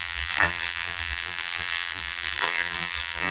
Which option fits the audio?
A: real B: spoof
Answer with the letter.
B